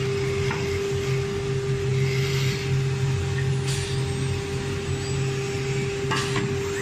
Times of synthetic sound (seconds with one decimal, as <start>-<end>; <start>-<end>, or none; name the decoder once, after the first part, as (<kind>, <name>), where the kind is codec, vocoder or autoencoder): none